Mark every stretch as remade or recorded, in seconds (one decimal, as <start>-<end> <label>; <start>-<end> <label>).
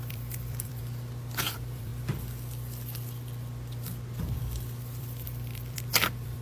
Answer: 0.0-0.8 remade; 0.8-1.5 recorded; 1.5-1.9 remade; 1.9-4.8 recorded; 4.8-6.4 remade